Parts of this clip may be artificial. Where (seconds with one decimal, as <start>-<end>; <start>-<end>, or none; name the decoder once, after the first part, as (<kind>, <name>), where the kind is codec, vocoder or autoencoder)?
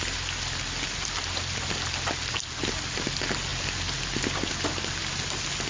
none